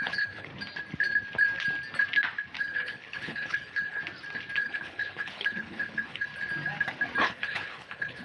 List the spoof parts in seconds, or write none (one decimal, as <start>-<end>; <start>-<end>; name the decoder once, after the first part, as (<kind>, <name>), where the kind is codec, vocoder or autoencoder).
0.0-0.5 (codec, HILCodec); 2.6-4.0; 4.6-6.3; 7.2-8.2